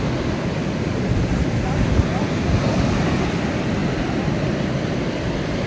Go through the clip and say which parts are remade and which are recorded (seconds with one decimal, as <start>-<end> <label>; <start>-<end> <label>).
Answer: 0.0-5.7 recorded